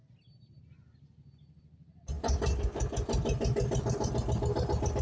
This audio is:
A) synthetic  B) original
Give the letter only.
B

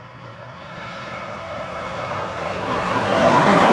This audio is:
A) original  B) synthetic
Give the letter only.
B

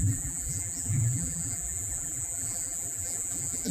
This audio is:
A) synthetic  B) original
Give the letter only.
A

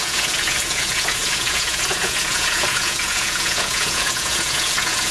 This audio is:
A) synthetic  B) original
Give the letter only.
A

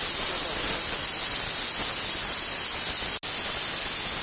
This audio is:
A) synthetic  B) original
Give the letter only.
B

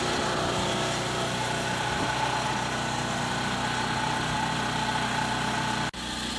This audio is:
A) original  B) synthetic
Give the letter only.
A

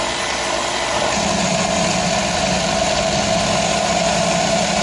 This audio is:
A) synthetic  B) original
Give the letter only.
B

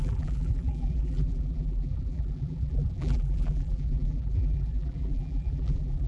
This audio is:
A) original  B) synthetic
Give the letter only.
B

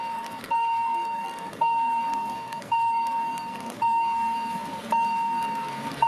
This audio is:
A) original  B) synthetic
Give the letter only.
B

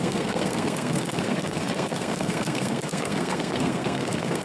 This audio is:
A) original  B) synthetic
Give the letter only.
B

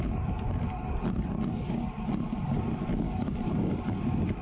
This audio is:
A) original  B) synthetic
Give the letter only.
A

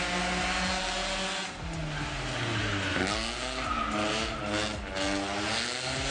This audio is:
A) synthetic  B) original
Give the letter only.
B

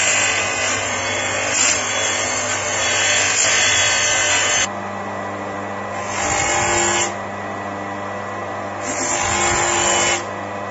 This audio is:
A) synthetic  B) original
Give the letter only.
B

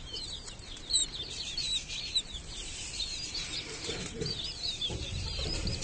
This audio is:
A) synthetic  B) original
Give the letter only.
A